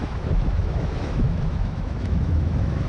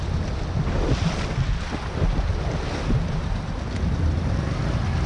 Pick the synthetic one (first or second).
first